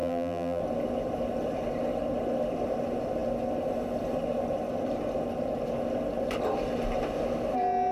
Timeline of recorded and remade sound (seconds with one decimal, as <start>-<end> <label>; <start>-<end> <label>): 0.0-0.6 remade; 0.6-7.9 recorded